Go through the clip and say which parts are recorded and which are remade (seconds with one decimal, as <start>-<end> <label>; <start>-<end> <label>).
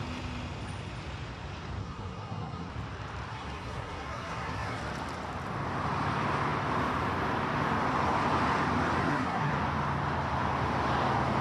0.0-1.8 recorded; 1.8-2.7 remade; 2.7-3.3 recorded; 3.3-4.8 remade; 4.8-9.0 recorded; 9.0-9.5 remade; 9.5-11.4 recorded